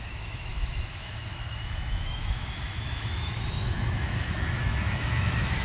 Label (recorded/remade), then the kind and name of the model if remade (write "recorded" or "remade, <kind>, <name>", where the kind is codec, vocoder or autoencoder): remade, autoencoder, DAC-VAE